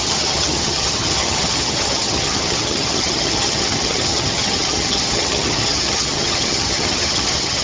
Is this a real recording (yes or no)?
no